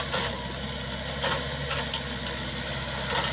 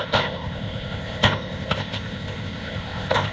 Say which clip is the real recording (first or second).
first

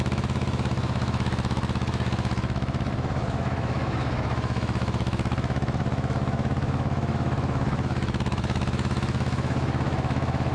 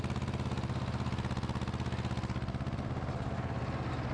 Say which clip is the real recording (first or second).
second